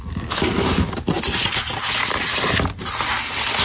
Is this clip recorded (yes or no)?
yes